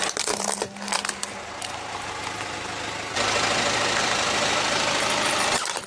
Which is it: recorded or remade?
remade